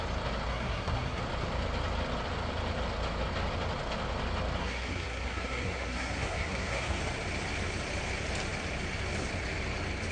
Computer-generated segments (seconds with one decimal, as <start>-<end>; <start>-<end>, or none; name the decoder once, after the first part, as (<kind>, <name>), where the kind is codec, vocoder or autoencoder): 0.5-1.2 (codec, SNAC); 4.6-7.0